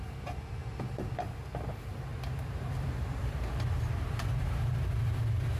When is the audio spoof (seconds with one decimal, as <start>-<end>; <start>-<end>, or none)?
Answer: 0.0-0.6; 1.2-5.6